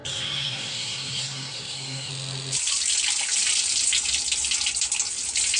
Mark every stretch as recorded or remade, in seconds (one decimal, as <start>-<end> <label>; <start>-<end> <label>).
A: 0.0-2.1 remade; 2.1-5.6 recorded

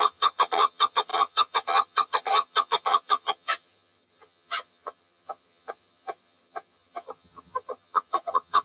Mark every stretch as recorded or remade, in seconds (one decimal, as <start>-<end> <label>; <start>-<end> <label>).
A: 0.0-8.6 remade

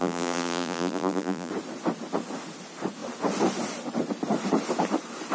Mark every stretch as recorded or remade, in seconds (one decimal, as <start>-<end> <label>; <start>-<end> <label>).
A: 0.0-1.5 remade; 1.5-5.3 recorded

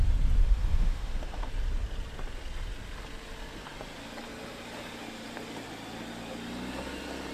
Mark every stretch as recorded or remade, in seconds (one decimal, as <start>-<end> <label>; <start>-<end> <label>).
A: 0.0-0.4 recorded; 0.4-1.5 remade; 1.5-7.3 recorded

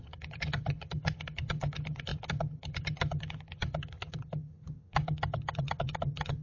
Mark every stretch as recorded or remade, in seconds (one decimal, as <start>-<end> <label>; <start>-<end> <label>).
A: 0.0-6.4 remade

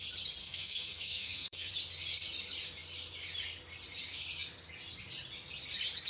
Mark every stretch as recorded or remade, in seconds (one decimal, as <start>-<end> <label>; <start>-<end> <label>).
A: 0.0-0.4 recorded; 0.4-1.7 remade; 1.7-6.1 recorded